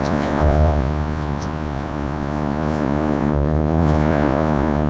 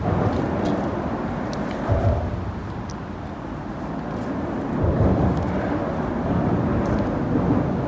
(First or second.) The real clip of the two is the second